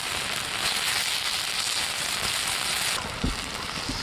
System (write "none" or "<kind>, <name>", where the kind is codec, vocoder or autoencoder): none